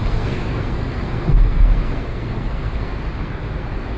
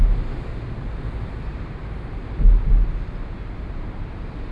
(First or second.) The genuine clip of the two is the second